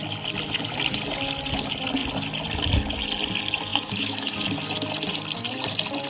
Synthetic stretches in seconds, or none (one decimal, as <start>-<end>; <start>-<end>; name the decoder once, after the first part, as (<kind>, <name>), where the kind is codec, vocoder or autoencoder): 3.7-4.3 (autoencoder, DAC-VAE)